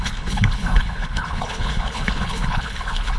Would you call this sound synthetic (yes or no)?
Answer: yes